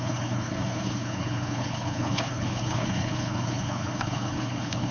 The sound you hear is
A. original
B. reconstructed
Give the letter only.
B